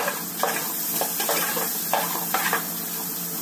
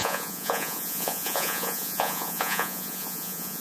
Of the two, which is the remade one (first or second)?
second